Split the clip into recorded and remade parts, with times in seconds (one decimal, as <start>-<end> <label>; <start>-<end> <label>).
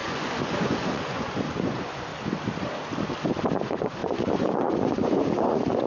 0.0-2.1 remade; 2.1-3.5 recorded; 3.5-5.9 remade